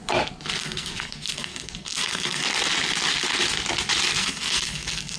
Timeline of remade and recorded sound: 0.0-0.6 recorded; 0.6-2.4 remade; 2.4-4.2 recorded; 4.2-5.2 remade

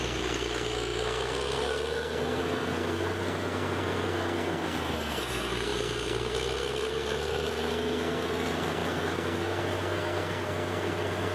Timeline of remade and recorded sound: 0.0-11.3 remade

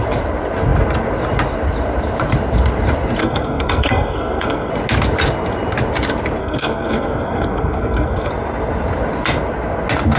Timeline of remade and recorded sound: 0.0-3.2 recorded; 3.2-4.7 remade; 4.7-6.4 recorded; 6.4-8.3 remade; 8.3-10.2 recorded

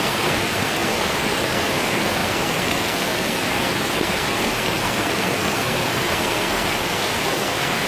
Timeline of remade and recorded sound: 0.0-7.9 remade

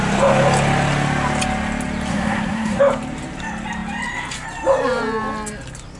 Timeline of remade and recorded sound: 0.0-2.1 recorded; 2.1-2.8 remade; 2.8-6.0 recorded